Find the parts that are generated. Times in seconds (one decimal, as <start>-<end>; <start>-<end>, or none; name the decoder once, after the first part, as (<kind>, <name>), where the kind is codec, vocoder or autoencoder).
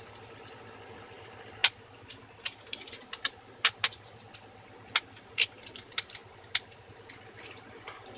none